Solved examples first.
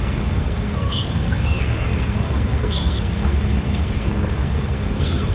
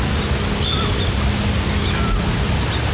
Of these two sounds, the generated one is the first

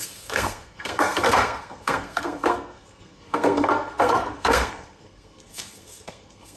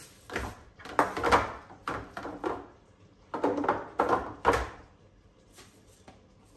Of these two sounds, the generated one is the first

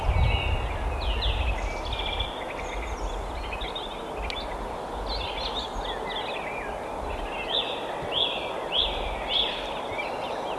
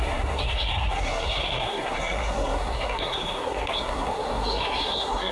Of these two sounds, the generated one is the second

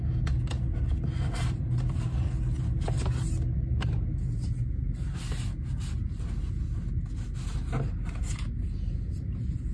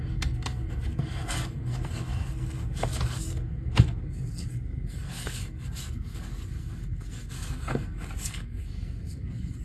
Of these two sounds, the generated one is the second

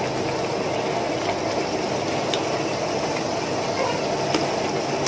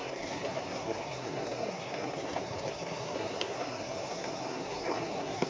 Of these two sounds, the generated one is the second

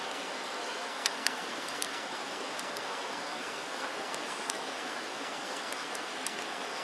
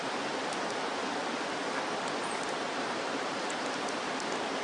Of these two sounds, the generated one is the first